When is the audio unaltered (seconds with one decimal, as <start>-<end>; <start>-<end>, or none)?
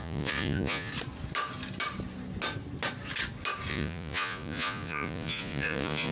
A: 0.9-3.7